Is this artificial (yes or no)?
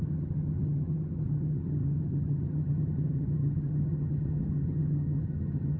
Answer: yes